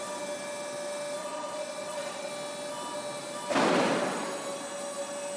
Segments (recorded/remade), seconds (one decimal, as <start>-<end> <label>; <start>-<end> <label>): 0.0-1.2 recorded; 1.2-2.3 remade; 2.3-5.4 recorded